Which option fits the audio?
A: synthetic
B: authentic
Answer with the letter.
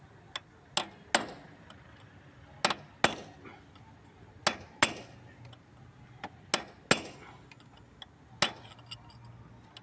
B